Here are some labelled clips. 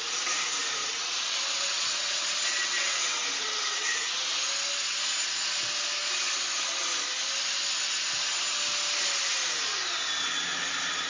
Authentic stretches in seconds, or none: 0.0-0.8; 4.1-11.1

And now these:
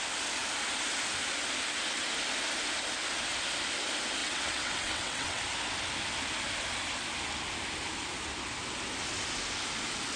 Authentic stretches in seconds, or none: 0.0-4.2; 5.4-10.2

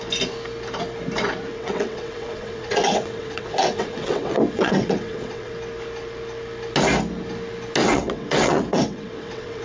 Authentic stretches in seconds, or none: 0.0-1.5; 5.5-7.8

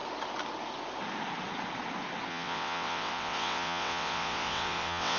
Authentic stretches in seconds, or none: 0.0-2.3

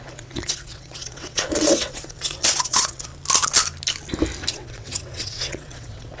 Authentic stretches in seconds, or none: 3.1-4.5